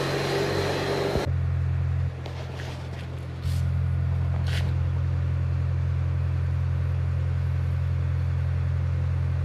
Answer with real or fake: real